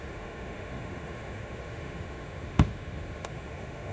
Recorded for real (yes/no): no